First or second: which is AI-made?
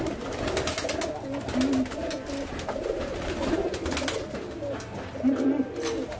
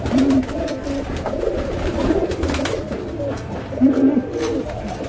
second